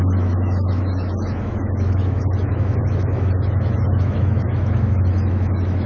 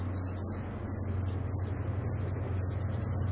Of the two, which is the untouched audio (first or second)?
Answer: second